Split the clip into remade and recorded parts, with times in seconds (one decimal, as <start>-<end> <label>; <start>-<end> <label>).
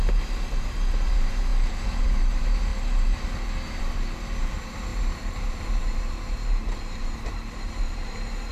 0.0-1.5 remade; 1.5-2.0 recorded; 2.0-2.7 remade; 2.7-3.8 recorded; 3.8-8.5 remade